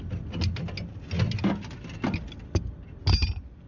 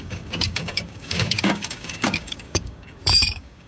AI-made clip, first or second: second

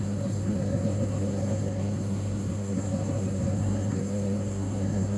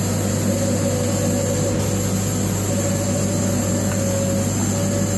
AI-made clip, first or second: first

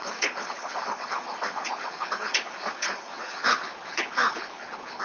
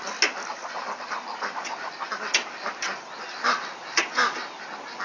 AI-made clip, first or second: first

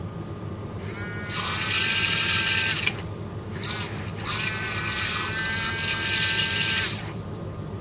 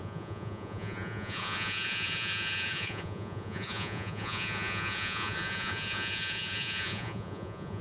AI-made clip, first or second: second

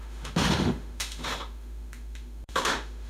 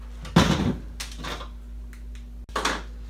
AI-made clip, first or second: first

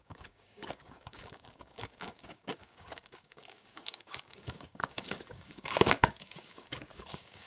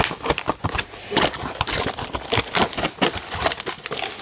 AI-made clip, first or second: first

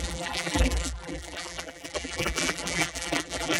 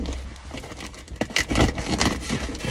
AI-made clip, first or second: first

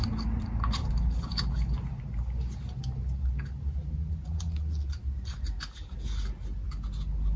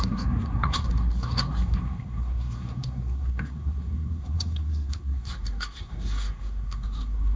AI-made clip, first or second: second